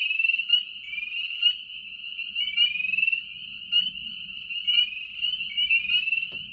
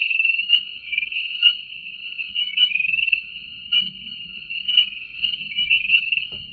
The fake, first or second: second